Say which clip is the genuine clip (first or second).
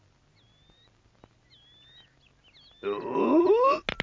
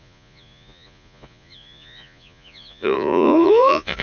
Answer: first